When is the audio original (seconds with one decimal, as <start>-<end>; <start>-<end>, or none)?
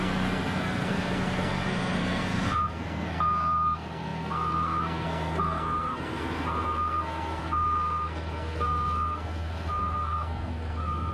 none